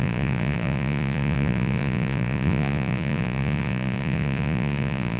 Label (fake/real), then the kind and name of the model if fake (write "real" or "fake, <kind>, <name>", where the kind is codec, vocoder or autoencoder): fake, vocoder, Vocos